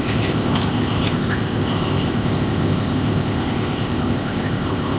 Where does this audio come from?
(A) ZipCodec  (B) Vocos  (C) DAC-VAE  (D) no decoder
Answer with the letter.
A